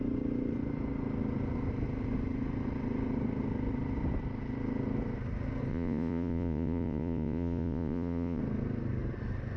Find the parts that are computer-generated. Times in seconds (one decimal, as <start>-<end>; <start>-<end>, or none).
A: 5.7-8.4